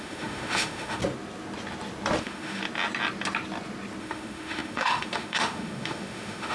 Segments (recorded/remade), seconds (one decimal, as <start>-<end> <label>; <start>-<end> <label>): 0.0-1.0 remade; 1.0-2.2 recorded; 2.2-2.6 remade; 2.6-4.0 recorded; 4.0-6.5 remade